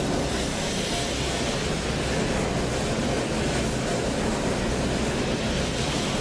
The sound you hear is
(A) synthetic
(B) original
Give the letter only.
B